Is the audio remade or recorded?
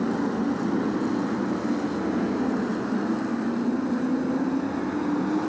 recorded